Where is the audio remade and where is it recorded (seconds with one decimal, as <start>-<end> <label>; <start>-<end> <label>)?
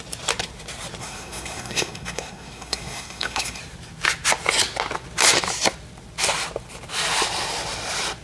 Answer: 0.0-1.0 recorded; 1.0-3.6 remade; 3.6-8.2 recorded